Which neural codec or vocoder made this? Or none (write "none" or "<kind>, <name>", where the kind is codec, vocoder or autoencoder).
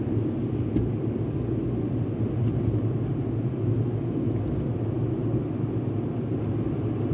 none